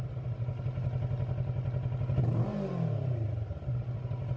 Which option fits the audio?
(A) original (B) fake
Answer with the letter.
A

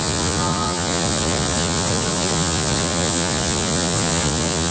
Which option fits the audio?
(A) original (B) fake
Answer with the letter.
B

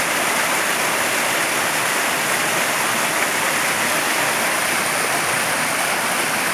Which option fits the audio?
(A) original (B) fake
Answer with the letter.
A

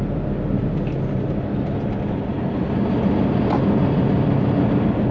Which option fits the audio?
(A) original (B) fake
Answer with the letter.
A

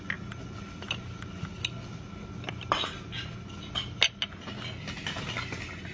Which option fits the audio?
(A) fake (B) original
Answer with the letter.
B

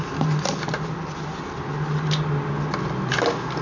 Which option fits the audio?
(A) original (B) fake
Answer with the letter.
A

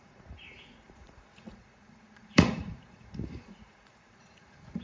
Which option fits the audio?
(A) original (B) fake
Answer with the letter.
B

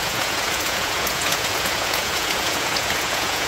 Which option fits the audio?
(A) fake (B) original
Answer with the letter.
A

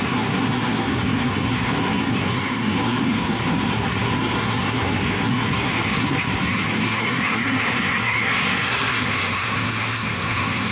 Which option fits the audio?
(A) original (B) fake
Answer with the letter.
B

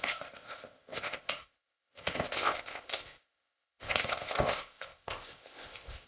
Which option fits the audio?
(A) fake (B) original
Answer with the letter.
A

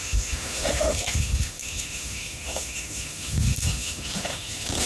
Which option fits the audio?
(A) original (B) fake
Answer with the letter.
B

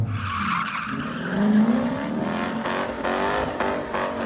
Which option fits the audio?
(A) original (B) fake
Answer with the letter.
A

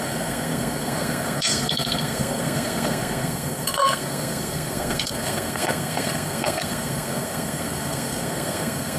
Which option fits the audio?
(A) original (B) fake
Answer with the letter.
B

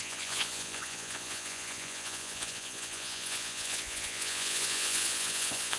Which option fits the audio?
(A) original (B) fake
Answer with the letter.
B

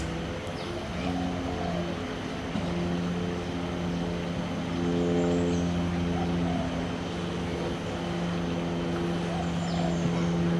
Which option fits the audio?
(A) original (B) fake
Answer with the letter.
A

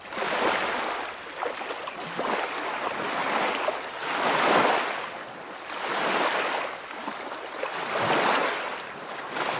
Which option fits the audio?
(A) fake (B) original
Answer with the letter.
B